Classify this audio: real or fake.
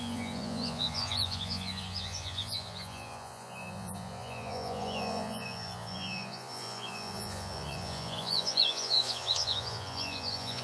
fake